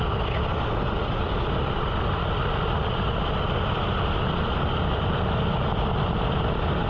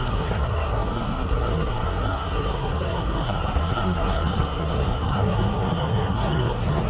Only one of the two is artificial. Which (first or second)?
second